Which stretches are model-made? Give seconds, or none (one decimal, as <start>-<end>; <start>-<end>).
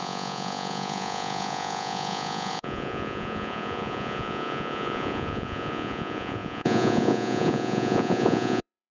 0.0-8.9